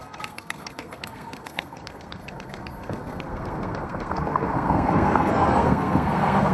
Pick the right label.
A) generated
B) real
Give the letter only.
A